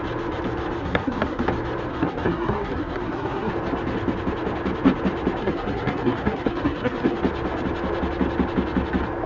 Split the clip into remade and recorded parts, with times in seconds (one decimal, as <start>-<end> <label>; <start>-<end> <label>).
0.0-0.8 recorded; 0.8-1.4 remade; 1.4-1.9 recorded; 1.9-3.5 remade; 3.5-5.4 recorded; 5.4-7.2 remade; 7.2-9.3 recorded